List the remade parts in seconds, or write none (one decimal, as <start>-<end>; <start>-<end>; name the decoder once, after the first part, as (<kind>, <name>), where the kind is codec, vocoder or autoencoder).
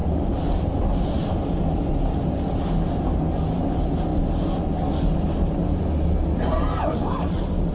none